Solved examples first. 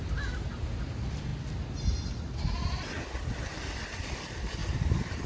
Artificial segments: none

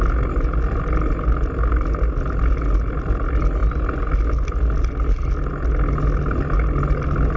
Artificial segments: none